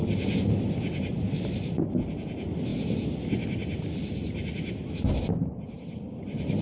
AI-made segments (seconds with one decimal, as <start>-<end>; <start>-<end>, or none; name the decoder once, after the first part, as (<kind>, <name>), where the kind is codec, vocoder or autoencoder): none